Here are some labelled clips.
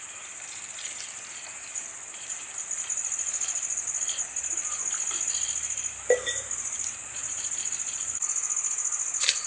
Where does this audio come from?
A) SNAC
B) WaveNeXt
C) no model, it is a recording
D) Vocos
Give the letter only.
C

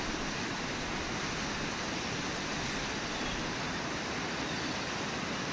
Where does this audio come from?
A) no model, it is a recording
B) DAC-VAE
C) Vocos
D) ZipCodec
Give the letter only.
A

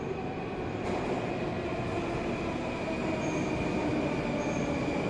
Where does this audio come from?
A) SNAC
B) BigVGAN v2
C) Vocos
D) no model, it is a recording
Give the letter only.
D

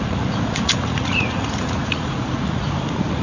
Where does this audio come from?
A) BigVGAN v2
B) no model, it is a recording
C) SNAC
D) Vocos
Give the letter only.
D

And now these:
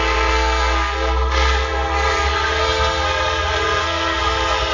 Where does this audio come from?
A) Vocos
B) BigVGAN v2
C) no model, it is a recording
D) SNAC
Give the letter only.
D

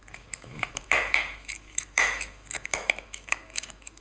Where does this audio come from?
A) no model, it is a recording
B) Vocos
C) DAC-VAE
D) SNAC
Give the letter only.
C